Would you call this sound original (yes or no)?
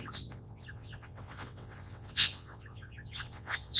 no